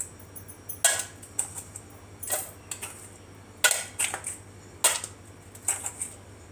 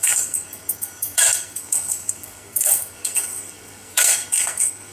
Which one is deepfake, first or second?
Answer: second